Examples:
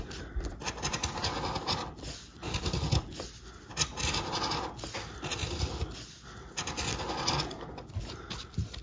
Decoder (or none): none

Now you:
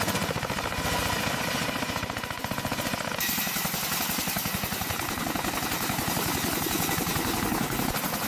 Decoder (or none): none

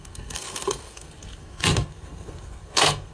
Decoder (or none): codec, SNAC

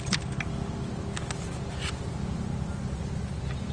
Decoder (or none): none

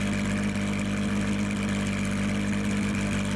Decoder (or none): none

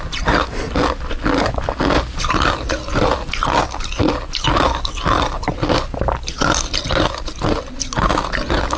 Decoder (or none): none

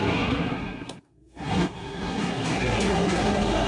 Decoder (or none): codec, SNAC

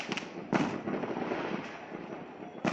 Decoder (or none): none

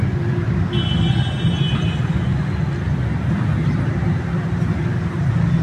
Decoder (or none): none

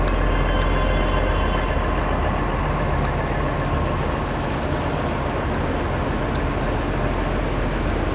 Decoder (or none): none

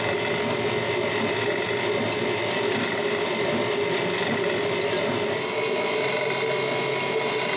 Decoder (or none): none